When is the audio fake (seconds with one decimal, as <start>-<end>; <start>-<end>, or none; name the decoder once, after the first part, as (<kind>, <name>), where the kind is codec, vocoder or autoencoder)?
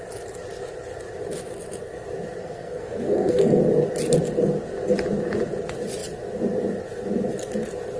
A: 2.4-3.6 (codec, SNAC)